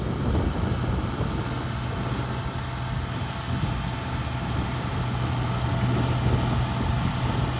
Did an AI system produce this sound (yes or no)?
no